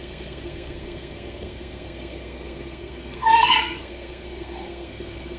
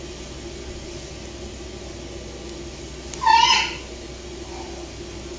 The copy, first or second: first